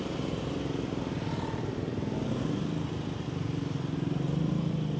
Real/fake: real